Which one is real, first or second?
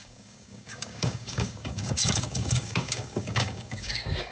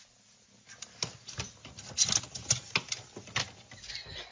second